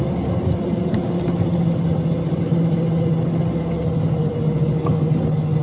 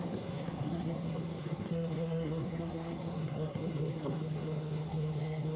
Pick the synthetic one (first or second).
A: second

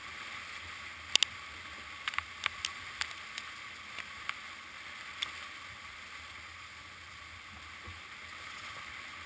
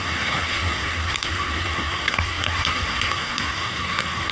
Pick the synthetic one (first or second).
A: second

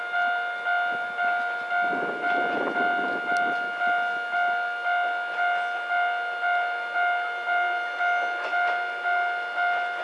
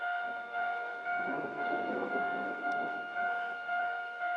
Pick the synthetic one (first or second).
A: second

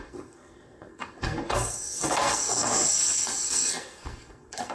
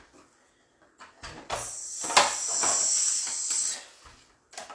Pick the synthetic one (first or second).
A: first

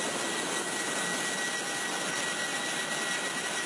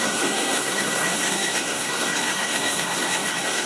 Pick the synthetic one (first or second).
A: second